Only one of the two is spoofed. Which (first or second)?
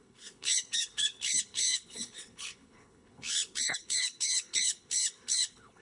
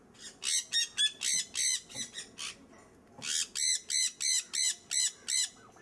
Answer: first